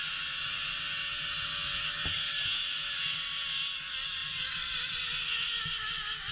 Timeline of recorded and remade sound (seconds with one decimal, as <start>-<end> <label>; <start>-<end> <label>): 0.0-4.2 recorded; 4.2-5.0 remade; 5.0-6.3 recorded